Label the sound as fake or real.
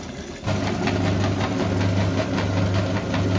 real